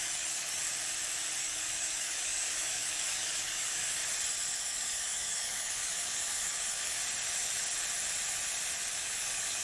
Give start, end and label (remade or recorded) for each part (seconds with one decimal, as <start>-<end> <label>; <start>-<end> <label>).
0.0-0.6 remade; 0.6-1.4 recorded; 1.4-4.0 remade; 4.0-4.6 recorded; 4.6-7.0 remade; 7.0-9.0 recorded; 9.0-9.6 remade